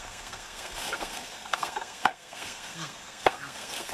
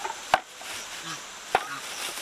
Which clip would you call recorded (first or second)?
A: second